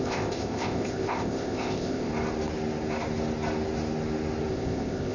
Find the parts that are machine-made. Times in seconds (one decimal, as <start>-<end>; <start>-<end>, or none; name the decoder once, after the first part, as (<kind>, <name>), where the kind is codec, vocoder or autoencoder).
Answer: 0.0-2.1 (codec, ZipCodec); 4.5-5.1